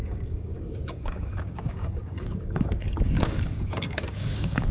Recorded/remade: remade